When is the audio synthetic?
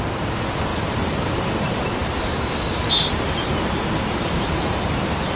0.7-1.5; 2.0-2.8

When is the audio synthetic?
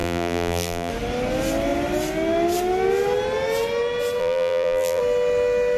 0.0-0.9; 4.2-5.0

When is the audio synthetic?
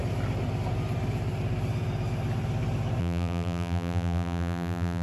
3.0-5.0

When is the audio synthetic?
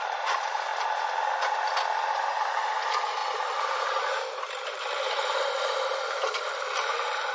0.0-0.7; 2.1-7.3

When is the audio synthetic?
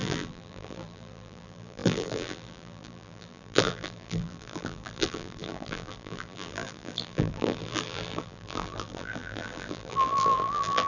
0.0-10.9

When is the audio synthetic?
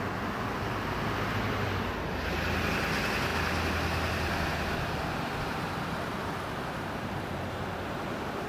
none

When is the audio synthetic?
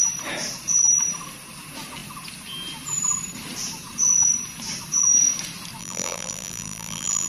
5.8-7.3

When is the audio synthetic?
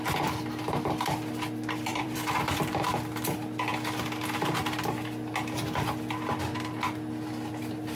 1.9-2.7